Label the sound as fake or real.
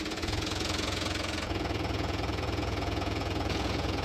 fake